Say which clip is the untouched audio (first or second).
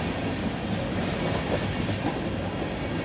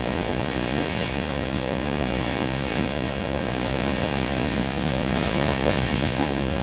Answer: first